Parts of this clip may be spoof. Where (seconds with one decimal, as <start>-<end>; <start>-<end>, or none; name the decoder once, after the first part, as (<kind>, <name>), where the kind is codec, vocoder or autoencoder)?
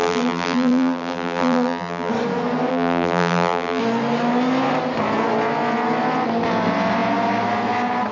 0.0-2.1 (vocoder, BigVGAN v2); 2.7-3.8